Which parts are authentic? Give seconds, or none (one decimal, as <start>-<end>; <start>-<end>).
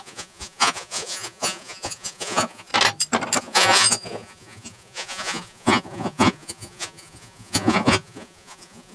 2.7-3.4